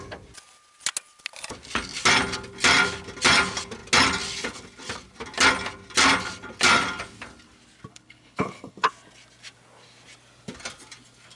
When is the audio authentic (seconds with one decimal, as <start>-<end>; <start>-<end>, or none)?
0.0-7.9; 8.9-11.4